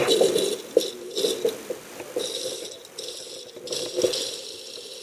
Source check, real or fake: real